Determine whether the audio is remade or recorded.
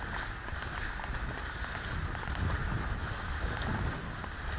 recorded